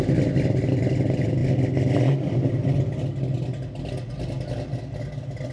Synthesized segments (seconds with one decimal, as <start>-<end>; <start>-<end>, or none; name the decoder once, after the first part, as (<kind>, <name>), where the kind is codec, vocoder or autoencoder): none